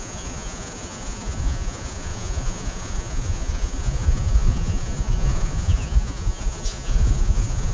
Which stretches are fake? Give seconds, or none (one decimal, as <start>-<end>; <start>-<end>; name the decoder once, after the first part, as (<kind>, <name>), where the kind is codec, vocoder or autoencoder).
0.0-7.7 (vocoder, Vocos)